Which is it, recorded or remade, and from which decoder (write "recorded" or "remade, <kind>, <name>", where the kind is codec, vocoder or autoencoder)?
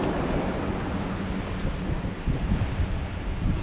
recorded